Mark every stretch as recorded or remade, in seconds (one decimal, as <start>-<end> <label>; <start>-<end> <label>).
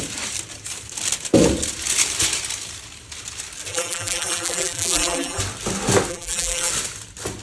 0.0-3.7 recorded; 3.7-5.4 remade; 5.4-6.1 recorded; 6.1-6.7 remade; 6.7-7.4 recorded